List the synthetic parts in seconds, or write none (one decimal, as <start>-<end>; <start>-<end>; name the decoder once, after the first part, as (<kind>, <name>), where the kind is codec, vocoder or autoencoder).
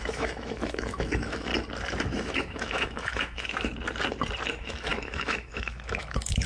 0.0-1.5 (autoencoder, DAC-VAE); 2.1-3.7; 4.5-6.5